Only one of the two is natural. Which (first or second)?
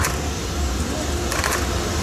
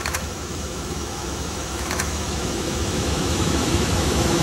first